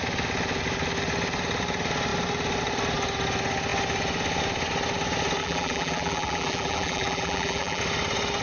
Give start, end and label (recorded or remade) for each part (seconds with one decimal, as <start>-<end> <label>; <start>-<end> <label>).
0.0-5.4 recorded; 5.4-7.8 remade; 7.8-8.4 recorded